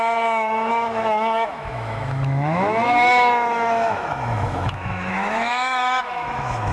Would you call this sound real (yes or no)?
no